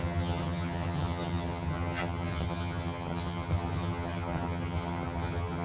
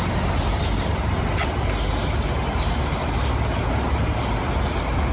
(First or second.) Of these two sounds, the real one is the second